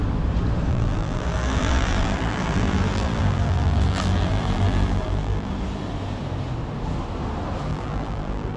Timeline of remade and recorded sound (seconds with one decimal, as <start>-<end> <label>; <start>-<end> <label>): 0.0-0.7 recorded; 0.7-5.5 remade; 5.5-7.7 recorded; 7.7-8.6 remade